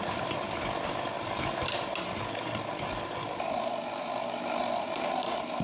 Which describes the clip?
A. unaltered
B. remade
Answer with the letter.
A